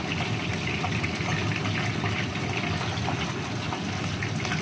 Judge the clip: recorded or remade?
recorded